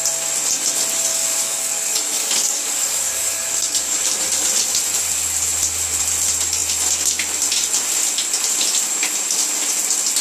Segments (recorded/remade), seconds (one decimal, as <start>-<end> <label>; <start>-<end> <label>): 0.0-1.1 recorded; 1.1-4.0 remade; 4.0-10.2 recorded